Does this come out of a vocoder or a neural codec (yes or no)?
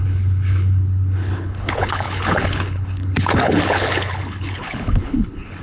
yes